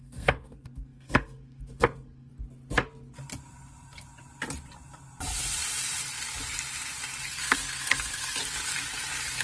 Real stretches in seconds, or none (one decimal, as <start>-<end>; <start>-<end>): 2.3-7.3; 8.4-9.4